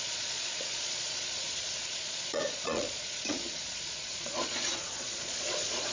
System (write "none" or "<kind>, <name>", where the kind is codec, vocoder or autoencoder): vocoder, Vocos